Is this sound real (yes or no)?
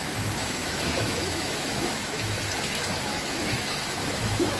no